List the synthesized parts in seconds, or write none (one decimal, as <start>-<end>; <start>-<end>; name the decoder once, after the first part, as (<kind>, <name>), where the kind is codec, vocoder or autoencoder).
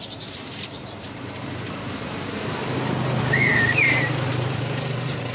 0.0-2.6 (vocoder, BigVGAN v2); 3.2-5.3